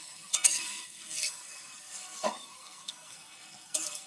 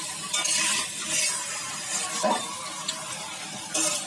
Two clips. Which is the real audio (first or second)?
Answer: second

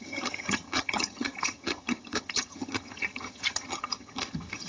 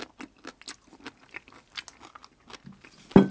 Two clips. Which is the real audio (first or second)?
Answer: second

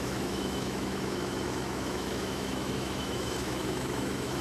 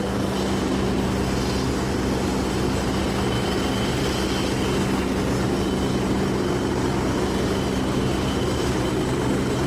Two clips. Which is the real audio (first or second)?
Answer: second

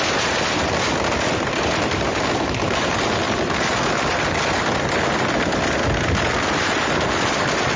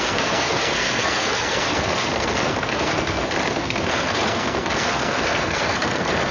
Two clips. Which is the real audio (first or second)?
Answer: first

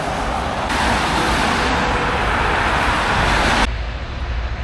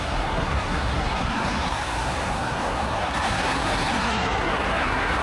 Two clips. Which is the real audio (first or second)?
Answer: first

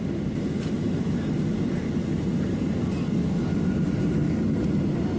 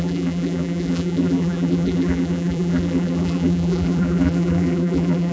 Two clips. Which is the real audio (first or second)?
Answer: first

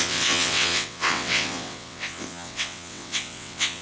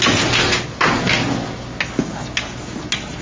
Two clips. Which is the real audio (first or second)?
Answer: second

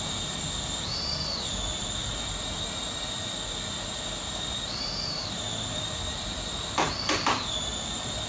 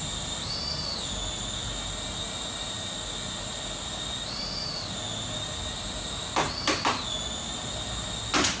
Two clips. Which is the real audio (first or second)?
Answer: second